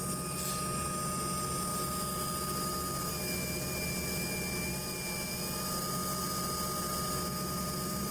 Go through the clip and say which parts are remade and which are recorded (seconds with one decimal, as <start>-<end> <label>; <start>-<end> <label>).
0.0-8.1 recorded